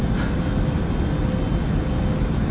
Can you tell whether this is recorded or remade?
recorded